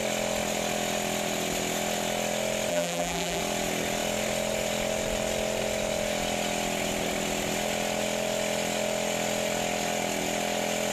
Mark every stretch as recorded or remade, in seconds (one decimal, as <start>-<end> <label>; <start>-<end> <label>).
0.0-2.7 recorded; 2.7-3.4 remade; 3.4-10.9 recorded